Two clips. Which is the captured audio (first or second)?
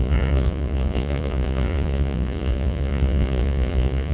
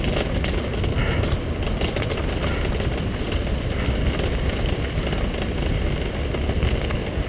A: second